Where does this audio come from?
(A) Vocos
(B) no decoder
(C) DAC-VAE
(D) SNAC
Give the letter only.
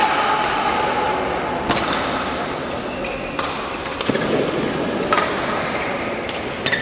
B